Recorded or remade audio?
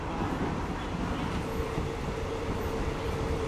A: recorded